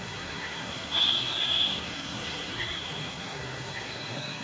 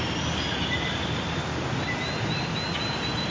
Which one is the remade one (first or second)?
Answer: first